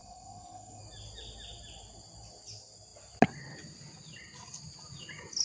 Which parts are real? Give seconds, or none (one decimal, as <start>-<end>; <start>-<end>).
0.8-5.4